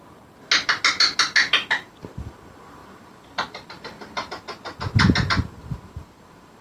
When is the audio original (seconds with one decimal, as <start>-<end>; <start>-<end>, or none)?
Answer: 0.0-2.8; 4.3-6.6